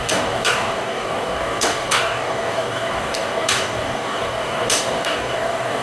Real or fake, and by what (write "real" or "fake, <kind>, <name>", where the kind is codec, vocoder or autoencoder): fake, codec, DAC